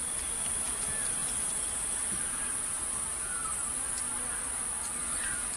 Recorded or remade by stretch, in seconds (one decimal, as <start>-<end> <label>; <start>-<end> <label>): 0.0-5.6 remade